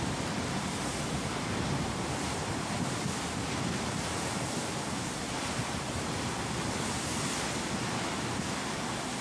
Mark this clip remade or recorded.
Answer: recorded